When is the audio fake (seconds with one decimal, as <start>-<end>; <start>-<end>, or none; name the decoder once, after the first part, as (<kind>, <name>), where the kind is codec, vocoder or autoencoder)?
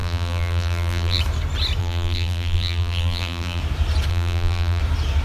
0.0-1.2 (vocoder, BigVGAN v2); 1.8-3.6; 4.1-4.8